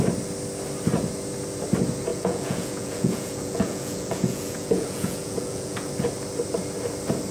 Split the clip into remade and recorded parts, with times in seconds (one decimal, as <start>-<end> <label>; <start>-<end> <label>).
0.0-2.1 recorded; 2.1-5.9 remade; 5.9-7.3 recorded